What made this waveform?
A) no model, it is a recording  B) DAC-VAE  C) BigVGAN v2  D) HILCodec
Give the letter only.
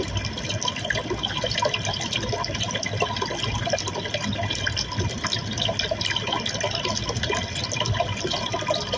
A